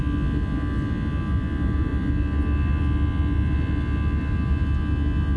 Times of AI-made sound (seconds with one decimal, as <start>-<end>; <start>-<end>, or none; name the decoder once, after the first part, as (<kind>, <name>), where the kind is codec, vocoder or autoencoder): none